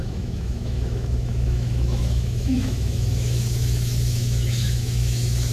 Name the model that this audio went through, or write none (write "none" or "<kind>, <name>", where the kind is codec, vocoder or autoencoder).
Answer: autoencoder, DAC-VAE